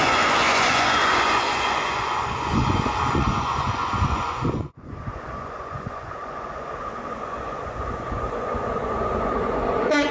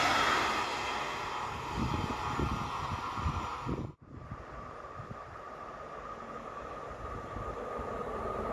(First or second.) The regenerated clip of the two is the first